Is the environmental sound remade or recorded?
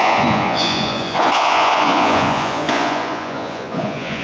remade